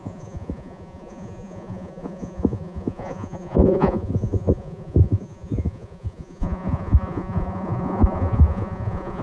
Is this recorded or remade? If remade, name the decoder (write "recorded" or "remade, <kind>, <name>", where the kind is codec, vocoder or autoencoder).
remade, vocoder, Vocos